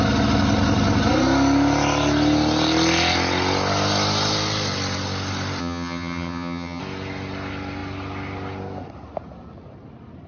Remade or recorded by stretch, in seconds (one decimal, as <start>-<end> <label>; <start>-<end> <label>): 0.0-5.6 recorded; 5.6-6.8 remade; 6.8-10.3 recorded